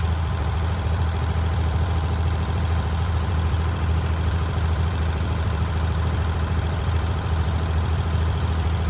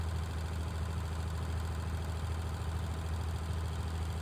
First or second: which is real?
second